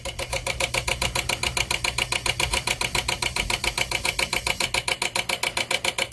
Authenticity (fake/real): real